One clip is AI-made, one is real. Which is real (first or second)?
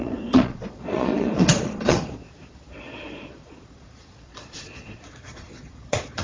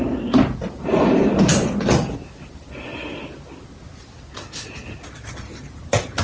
second